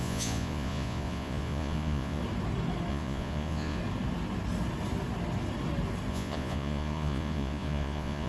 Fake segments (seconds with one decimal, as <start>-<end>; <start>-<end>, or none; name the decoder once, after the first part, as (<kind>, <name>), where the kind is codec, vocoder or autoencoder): 0.0-2.2 (vocoder, Vocos); 2.9-3.8; 6.1-8.3